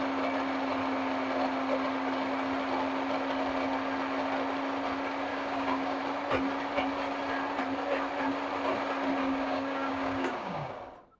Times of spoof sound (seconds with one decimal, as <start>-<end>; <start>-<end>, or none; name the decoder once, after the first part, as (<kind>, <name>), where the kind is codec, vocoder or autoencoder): 5.3-6.0 (codec, DAC); 9.2-10.7